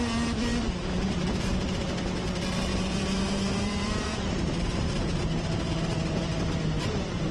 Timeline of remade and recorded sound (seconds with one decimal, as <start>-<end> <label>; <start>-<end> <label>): 0.0-2.7 recorded; 2.7-7.3 remade